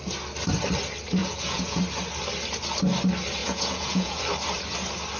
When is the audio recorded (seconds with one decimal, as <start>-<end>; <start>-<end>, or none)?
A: 0.0-1.2; 1.8-3.4; 4.2-5.2